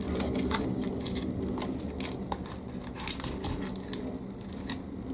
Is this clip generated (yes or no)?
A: no